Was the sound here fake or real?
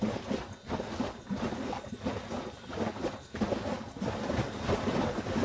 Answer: real